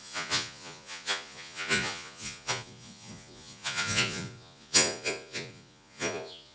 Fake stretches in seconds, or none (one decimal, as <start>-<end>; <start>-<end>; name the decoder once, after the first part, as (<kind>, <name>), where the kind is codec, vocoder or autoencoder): 0.0-6.5 (vocoder, Vocos)